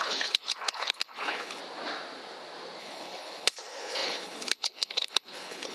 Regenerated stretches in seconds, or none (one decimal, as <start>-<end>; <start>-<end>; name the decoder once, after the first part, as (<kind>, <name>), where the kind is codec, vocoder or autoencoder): 0.0-1.6 (codec, HILCodec); 2.8-5.7